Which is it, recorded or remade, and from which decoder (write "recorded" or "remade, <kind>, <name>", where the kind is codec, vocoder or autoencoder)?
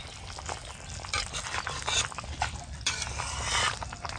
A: recorded